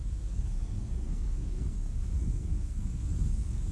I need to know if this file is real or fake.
fake